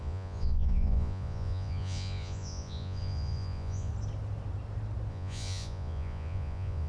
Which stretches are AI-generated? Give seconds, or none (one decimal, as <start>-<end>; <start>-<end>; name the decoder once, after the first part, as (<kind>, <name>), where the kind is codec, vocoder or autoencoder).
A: 0.0-3.9 (vocoder, Vocos); 5.1-6.9